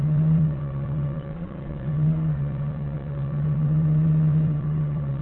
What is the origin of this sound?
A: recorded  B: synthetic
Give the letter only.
B